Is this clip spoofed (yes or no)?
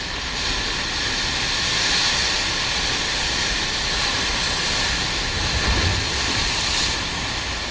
no